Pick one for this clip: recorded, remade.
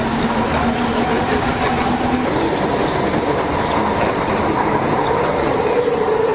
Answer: recorded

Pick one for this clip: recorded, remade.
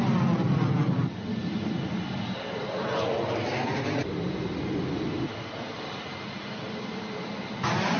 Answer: recorded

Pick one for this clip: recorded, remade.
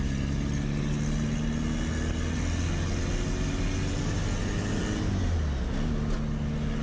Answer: recorded